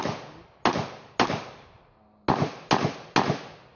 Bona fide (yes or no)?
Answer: yes